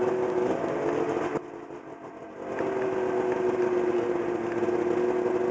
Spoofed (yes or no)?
no